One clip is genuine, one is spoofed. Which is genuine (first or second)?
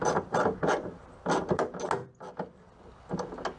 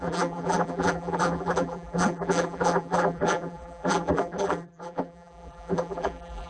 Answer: first